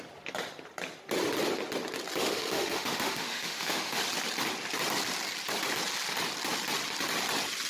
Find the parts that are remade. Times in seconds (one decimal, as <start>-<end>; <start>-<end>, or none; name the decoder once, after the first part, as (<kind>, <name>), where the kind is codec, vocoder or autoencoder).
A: 2.2-4.0 (autoencoder, DAC-VAE)